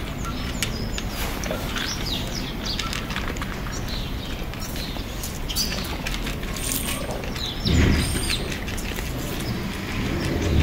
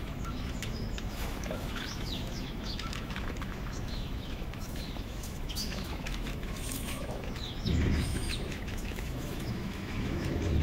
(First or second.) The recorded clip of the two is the first